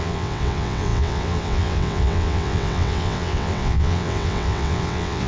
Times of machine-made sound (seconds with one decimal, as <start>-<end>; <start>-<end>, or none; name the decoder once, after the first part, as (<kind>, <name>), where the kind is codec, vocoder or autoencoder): 0.0-5.3 (vocoder, WaveNeXt)